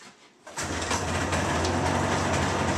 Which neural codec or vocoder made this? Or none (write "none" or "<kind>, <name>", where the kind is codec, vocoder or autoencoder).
none